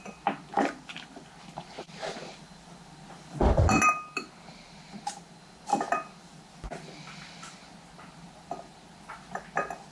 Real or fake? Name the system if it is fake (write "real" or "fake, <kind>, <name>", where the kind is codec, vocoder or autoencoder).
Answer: real